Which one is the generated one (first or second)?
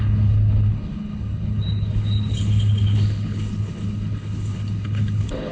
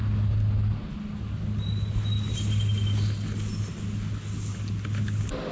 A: first